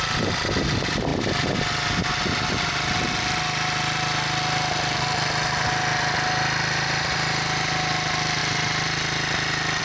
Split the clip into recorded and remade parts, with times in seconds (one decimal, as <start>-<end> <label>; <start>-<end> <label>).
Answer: 0.0-9.8 recorded